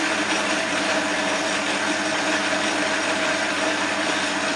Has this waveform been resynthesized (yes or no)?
yes